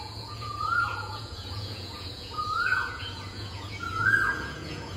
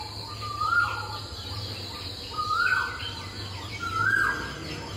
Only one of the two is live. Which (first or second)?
second